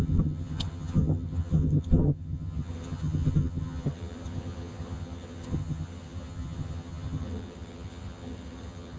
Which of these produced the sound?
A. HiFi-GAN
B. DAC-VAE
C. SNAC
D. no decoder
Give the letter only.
A